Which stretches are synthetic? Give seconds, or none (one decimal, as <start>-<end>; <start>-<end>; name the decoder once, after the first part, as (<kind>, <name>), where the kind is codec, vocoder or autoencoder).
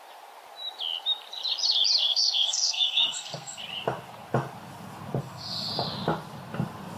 2.1-3.6 (codec, SNAC); 5.2-5.7